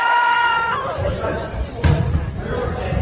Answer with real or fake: fake